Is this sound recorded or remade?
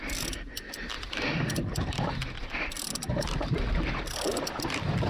remade